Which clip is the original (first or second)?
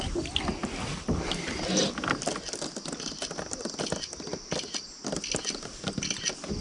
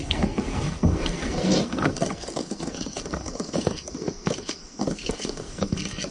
first